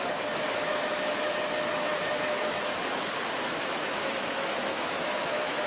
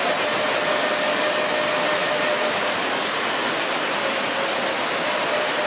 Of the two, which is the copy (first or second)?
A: first